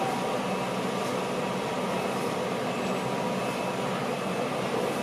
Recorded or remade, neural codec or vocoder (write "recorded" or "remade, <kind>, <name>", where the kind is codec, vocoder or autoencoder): recorded